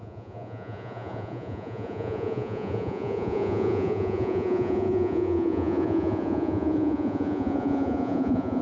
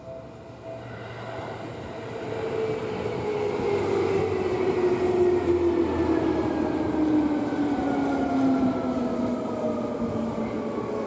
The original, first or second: second